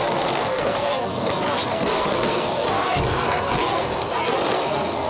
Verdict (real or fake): fake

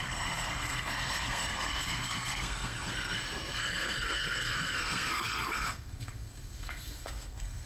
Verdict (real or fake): fake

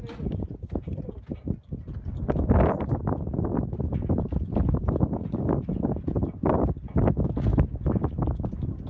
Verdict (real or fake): real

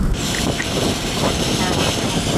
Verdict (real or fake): real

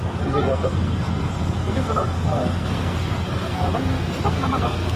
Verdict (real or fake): fake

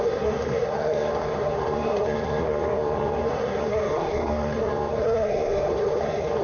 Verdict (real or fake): fake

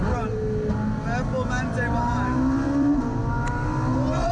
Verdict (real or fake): real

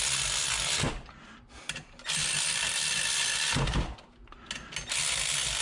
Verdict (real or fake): real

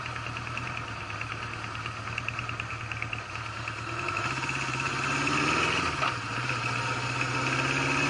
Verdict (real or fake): real